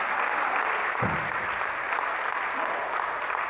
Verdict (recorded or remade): recorded